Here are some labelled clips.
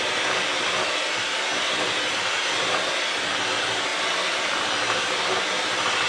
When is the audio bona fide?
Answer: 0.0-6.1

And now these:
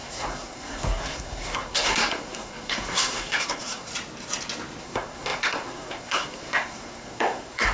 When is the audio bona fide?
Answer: 3.9-4.8

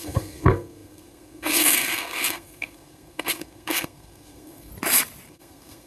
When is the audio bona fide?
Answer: 4.7-5.3

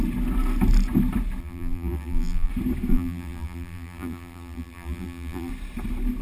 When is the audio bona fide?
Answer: 0.0-1.4; 2.5-2.9; 5.5-6.2

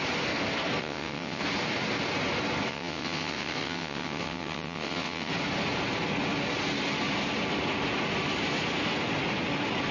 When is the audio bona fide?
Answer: 0.0-0.8; 1.4-2.7; 5.3-9.9

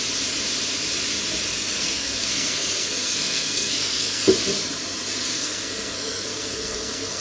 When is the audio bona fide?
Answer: 0.0-1.5; 4.3-5.3

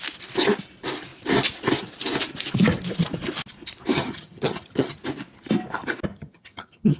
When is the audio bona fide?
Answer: 0.0-3.9; 5.0-6.1